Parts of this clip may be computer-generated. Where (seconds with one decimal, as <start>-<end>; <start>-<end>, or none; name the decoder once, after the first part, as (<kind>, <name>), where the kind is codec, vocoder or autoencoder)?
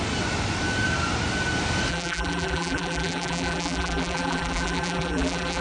1.9-5.6 (vocoder, BigVGAN v2)